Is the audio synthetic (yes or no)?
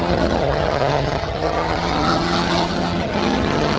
yes